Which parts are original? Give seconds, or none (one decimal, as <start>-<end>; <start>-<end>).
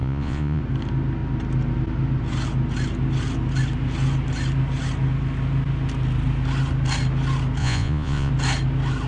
0.6-7.6; 8.3-9.1